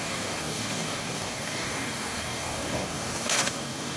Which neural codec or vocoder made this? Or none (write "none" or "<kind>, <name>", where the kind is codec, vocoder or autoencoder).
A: codec, DAC